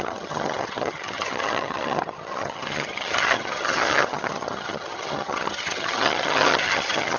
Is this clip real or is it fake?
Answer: fake